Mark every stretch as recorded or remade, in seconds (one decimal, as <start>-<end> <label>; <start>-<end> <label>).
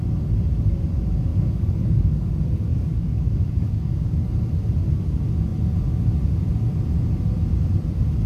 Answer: 0.0-1.3 recorded; 1.3-2.3 remade; 2.3-2.7 recorded; 2.7-4.2 remade; 4.2-8.3 recorded